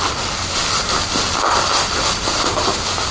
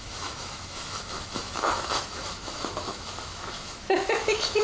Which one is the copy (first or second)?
second